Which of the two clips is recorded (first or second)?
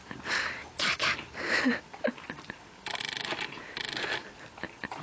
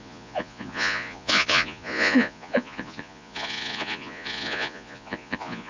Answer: first